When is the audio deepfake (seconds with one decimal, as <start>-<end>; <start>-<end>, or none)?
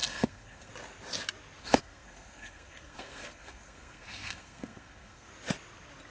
0.0-0.7; 1.6-5.3